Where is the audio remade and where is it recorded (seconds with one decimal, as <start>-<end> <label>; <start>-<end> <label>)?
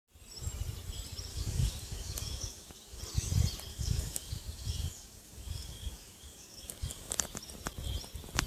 0.0-1.3 recorded; 1.3-3.0 remade; 3.0-3.7 recorded; 3.7-7.1 remade; 7.1-8.5 recorded